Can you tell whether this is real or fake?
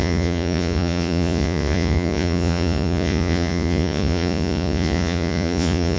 fake